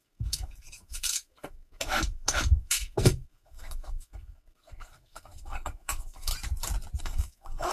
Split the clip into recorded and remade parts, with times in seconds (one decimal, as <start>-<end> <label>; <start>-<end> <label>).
0.0-6.3 remade; 6.3-7.0 recorded; 7.0-7.7 remade

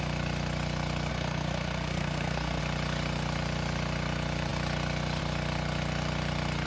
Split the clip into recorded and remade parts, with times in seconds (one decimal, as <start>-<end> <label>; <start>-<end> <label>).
0.0-1.1 recorded; 1.1-2.6 remade; 2.6-6.7 recorded

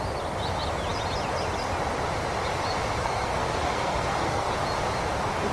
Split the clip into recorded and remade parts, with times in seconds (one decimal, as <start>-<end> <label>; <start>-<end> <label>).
0.0-3.0 recorded; 3.0-4.5 remade; 4.5-5.5 recorded

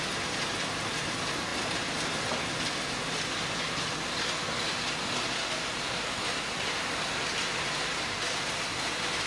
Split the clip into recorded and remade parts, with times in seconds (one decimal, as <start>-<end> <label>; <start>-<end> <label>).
0.0-9.3 recorded